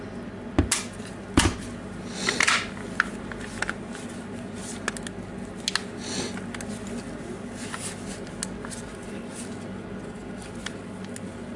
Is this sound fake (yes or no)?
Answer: no